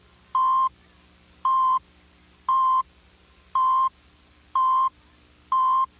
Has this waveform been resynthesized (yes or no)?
no